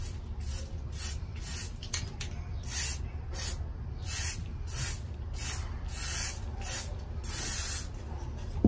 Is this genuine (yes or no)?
yes